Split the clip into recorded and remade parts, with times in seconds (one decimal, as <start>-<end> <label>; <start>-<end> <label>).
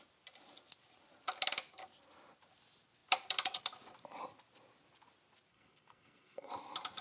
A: 0.0-5.5 recorded; 5.5-6.5 remade; 6.5-7.0 recorded